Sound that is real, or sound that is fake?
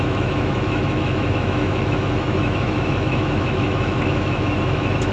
fake